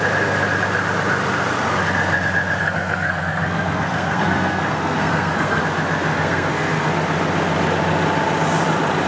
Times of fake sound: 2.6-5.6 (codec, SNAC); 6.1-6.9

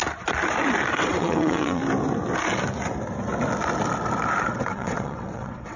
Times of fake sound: 0.9-1.8 (vocoder, WaveNeXt); 4.4-5.8

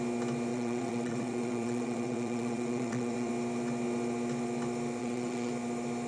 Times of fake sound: 0.5-3.3 (vocoder, WaveNeXt); 5.0-5.5